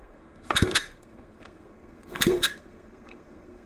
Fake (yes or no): yes